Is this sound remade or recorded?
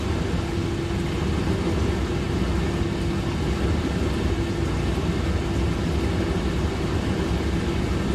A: recorded